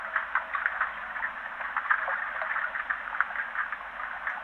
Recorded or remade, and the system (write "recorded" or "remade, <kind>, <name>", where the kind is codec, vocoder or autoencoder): recorded